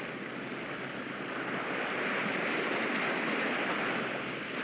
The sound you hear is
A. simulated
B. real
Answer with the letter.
B